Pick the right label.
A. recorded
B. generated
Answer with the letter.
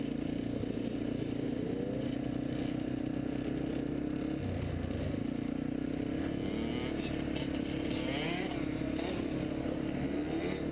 A